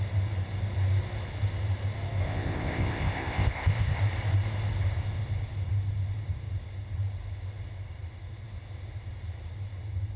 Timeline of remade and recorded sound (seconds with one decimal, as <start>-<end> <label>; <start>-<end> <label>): 0.0-2.2 recorded; 2.2-4.0 remade; 4.0-10.2 recorded